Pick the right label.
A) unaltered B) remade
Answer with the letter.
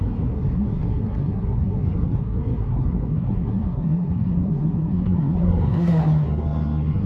B